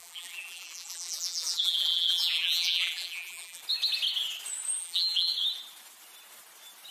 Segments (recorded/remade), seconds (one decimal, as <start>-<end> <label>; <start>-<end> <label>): 0.0-3.6 remade; 3.6-4.8 recorded; 4.8-5.3 remade; 5.3-6.9 recorded